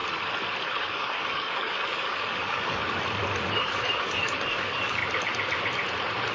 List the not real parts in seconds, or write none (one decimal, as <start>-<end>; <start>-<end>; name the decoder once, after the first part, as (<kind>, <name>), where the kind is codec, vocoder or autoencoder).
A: 0.6-2.8 (codec, DAC); 3.5-5.0